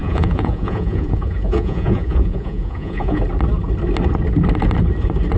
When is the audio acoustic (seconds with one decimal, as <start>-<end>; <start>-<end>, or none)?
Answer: 3.2-5.4